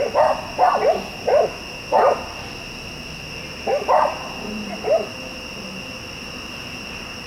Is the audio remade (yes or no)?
no